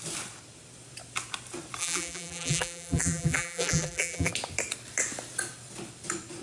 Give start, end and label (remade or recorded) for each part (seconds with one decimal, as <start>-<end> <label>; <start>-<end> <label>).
0.0-1.8 recorded; 1.8-4.3 remade; 4.3-6.4 recorded